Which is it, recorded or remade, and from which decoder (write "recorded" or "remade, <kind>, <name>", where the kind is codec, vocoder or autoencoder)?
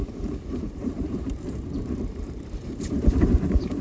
remade, vocoder, BigVGAN v2